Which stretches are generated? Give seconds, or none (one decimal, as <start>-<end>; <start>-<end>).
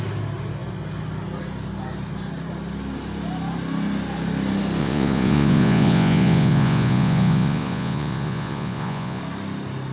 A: 4.8-9.2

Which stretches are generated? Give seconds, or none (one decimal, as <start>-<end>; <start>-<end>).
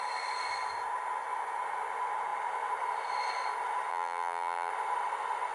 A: 3.9-4.7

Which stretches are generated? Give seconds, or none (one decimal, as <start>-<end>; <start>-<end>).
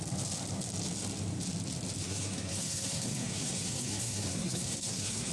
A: 2.0-5.3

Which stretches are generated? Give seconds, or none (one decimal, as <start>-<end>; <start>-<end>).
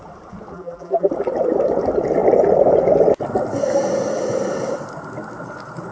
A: 0.5-1.1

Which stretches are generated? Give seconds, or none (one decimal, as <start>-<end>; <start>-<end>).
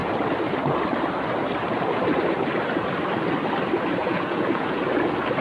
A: 4.0-4.8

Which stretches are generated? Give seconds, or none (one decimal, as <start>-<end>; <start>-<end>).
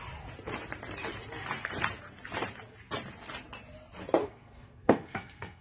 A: 4.2-5.6